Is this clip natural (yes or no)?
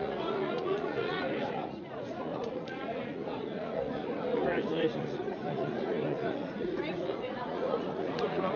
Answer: no